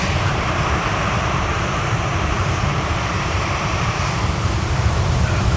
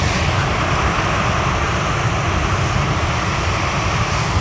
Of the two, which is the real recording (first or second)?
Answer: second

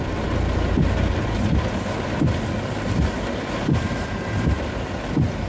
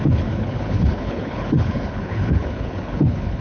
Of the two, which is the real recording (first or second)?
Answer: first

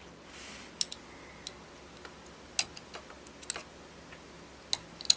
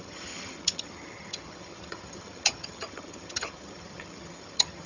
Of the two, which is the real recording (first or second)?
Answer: first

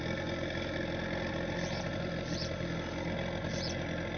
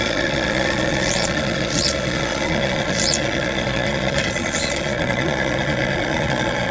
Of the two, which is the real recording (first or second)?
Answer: first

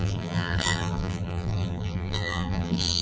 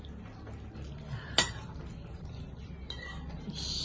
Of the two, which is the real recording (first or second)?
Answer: second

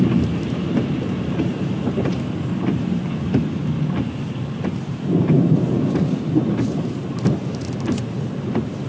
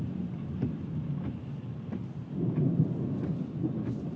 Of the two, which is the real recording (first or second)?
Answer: second